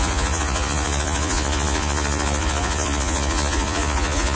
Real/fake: fake